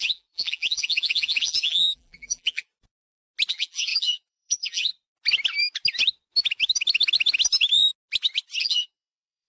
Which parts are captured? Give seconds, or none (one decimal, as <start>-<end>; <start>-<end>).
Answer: 2.7-3.5; 4.9-8.6